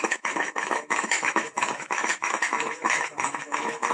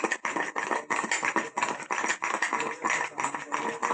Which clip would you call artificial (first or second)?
first